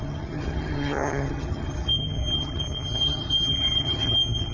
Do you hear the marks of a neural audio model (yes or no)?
yes